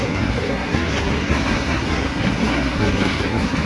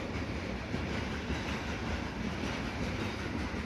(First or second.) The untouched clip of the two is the second